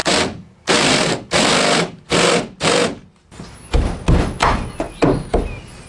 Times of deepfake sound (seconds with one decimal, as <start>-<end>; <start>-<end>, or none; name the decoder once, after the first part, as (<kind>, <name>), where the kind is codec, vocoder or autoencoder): none